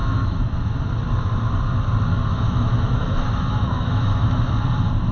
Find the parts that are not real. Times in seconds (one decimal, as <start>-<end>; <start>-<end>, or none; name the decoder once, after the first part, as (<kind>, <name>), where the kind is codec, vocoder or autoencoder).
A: 0.0-0.8 (autoencoder, DAC-VAE); 2.1-4.4